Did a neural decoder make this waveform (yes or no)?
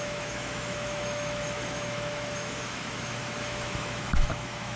yes